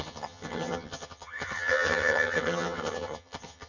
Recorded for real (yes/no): no